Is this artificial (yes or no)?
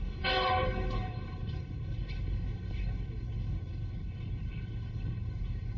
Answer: yes